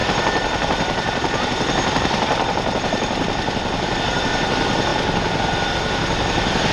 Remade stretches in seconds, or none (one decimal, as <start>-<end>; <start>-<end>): 0.0-4.0; 4.9-5.7